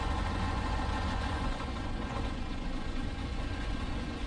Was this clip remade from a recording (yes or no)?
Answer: yes